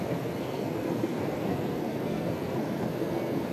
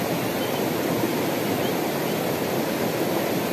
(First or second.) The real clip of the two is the second